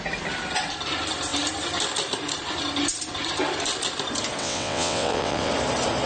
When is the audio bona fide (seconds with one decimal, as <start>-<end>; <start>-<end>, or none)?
0.0-4.4; 5.5-6.1